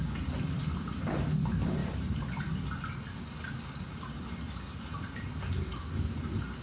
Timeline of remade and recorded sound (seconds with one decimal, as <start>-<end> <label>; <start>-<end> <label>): 0.0-1.8 recorded; 1.8-2.4 remade; 2.4-4.9 recorded; 4.9-5.8 remade; 5.8-6.6 recorded